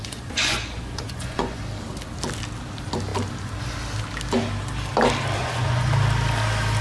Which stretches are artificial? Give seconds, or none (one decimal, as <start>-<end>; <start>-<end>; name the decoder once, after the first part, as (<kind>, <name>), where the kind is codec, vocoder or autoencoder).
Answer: 0.0-1.6 (vocoder, Vocos); 5.4-5.9